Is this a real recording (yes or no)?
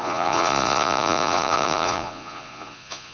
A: no